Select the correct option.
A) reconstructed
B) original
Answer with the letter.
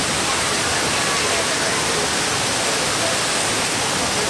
B